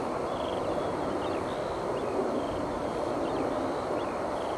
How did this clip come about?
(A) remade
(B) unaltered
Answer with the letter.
B